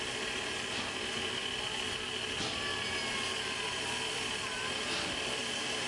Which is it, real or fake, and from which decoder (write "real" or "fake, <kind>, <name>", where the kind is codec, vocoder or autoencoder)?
real